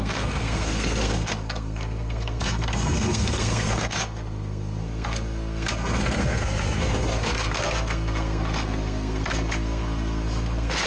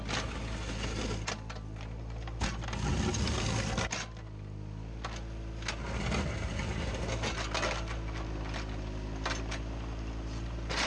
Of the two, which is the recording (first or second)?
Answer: second